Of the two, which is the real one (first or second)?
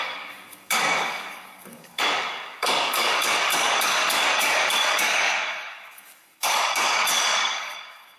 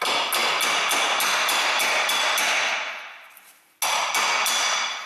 second